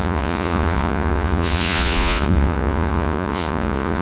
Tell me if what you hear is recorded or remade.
remade